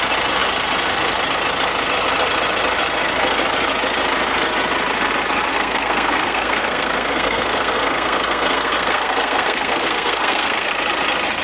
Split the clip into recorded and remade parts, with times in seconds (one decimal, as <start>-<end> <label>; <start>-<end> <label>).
0.0-5.5 recorded; 5.5-10.7 remade; 10.7-11.4 recorded